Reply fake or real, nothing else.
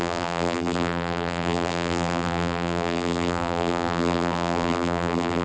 fake